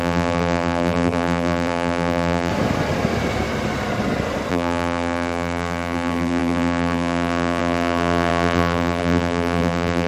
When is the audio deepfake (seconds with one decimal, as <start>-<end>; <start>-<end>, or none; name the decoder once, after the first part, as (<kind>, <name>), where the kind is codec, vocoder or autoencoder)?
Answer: 0.0-2.5 (vocoder, BigVGAN v2); 4.5-10.1